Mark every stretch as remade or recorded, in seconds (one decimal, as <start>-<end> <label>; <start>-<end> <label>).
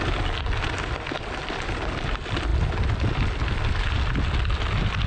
0.0-5.1 recorded